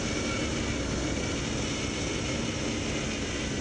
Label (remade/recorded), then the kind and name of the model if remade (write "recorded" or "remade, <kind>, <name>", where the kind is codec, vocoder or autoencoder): recorded